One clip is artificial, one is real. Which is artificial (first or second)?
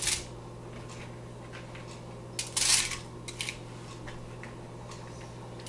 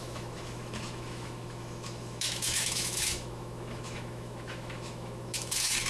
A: second